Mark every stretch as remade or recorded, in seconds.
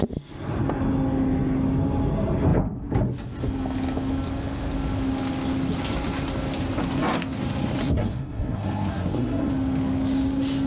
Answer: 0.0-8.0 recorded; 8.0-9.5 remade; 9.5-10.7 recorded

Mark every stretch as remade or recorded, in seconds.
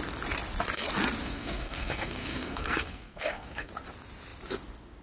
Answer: 0.0-1.2 recorded; 1.2-3.7 remade; 3.7-5.0 recorded